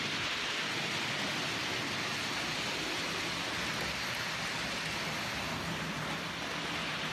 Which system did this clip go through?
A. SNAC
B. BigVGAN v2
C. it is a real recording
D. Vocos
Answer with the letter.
C